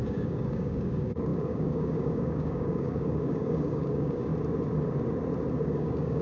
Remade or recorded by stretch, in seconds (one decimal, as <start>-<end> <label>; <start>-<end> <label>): 0.0-4.3 remade; 4.3-5.6 recorded; 5.6-6.2 remade